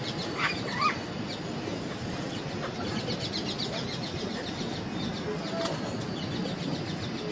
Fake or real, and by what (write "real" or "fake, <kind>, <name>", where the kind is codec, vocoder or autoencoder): real